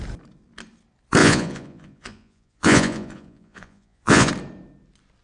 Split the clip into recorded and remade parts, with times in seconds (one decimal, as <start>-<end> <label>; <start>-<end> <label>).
0.0-1.2 recorded; 1.2-4.3 remade; 4.3-5.2 recorded